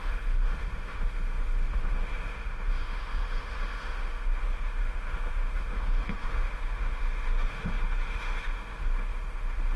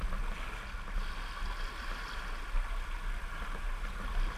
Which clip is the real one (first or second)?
second